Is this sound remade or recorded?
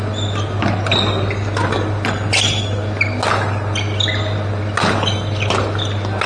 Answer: recorded